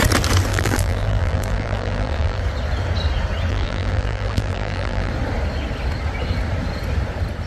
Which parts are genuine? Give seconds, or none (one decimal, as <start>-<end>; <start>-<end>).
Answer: 0.0-0.5; 2.4-3.5; 5.1-7.5